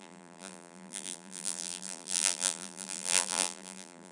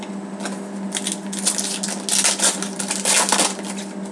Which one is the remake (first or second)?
first